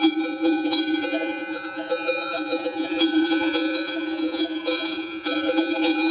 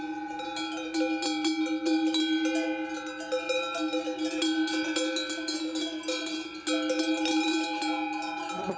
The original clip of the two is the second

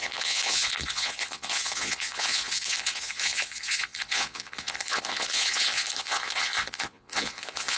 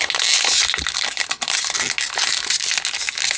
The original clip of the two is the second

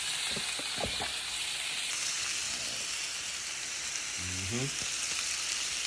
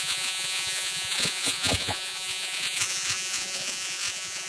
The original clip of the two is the first